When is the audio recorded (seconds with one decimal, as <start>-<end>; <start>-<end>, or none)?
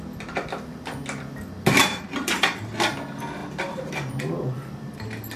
0.0-1.8; 2.6-5.4